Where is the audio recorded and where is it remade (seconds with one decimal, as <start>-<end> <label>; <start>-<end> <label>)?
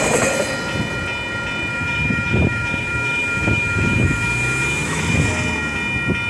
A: 0.0-1.7 recorded; 1.7-5.0 remade; 5.0-6.3 recorded